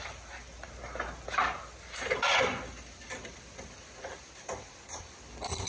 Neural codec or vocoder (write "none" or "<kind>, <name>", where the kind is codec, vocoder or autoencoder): none